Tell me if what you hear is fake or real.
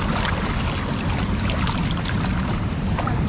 real